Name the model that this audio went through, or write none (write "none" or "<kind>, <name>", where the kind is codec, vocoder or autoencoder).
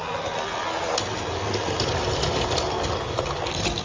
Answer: none